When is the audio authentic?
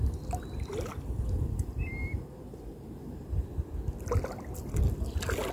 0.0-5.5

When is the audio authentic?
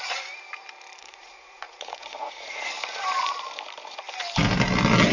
0.0-1.0; 2.7-5.1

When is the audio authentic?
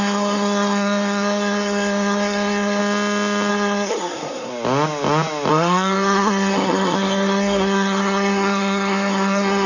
2.8-3.5; 4.5-5.5